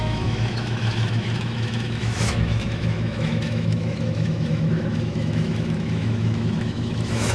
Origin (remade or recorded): remade